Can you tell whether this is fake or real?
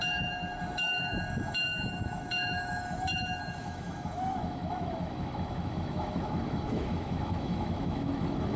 fake